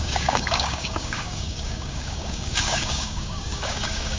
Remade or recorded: remade